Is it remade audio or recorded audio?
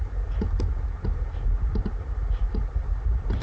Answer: recorded